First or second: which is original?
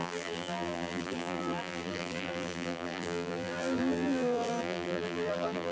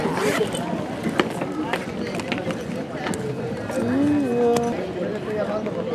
second